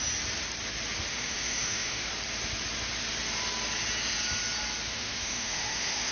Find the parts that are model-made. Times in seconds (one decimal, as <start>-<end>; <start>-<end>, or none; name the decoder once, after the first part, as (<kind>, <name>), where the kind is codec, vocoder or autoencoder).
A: 1.1-2.1 (autoencoder, DAC-VAE); 4.9-6.1